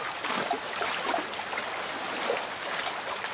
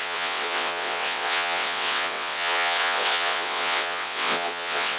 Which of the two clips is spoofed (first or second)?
second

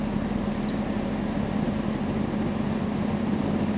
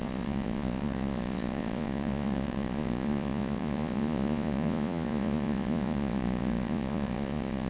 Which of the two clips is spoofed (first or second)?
second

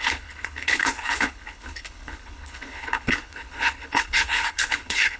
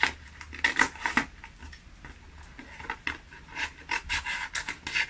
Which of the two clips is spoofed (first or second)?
first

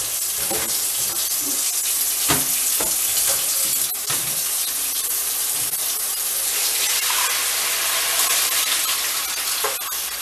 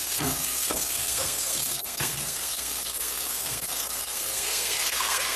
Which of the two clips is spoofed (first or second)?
second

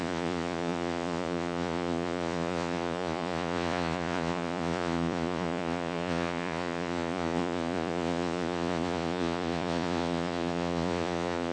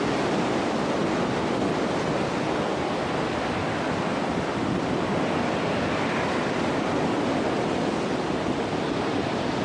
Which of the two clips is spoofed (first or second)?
first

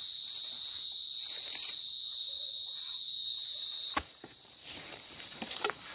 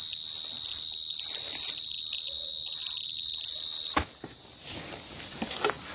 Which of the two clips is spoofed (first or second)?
first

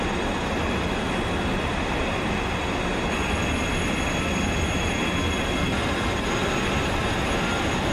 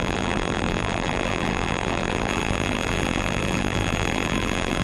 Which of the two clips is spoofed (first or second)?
second